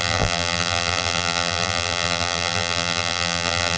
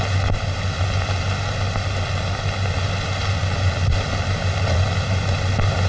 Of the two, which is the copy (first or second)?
first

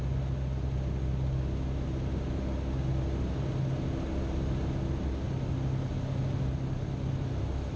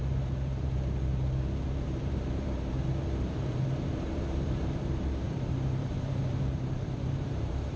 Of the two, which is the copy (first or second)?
second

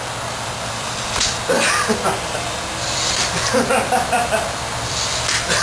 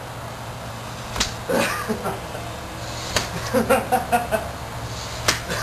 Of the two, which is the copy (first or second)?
first